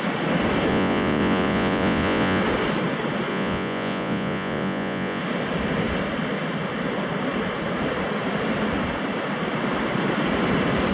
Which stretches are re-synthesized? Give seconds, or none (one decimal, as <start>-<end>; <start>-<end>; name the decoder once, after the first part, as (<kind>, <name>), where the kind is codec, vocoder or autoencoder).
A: 0.7-2.4 (vocoder, Vocos); 3.3-5.2